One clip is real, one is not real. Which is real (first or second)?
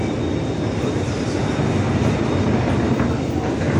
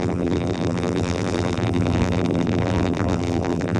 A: first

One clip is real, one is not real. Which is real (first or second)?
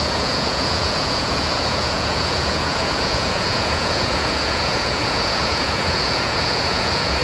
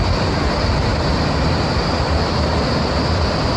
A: second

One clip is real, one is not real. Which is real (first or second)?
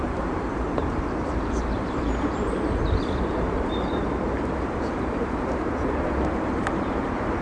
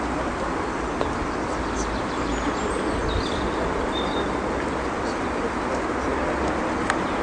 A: second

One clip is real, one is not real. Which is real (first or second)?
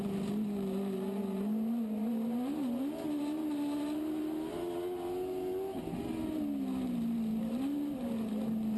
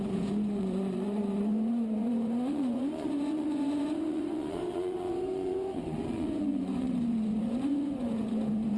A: first